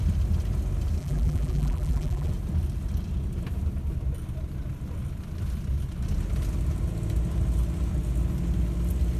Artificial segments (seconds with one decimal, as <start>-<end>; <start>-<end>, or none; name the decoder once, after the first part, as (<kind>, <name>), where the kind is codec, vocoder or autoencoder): 1.0-2.3 (vocoder, BigVGAN v2)